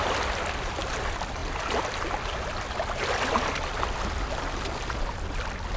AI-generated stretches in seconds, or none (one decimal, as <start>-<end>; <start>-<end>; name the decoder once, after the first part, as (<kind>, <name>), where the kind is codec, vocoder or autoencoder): none